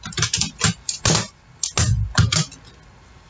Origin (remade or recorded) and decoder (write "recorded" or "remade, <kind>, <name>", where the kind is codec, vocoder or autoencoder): recorded